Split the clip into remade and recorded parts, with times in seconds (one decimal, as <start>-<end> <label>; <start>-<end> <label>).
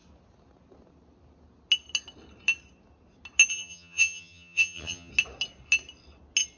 0.0-3.5 recorded; 3.5-5.1 remade; 5.1-6.6 recorded